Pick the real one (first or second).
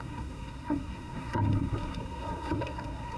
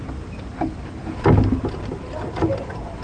second